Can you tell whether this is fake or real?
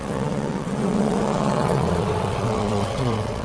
fake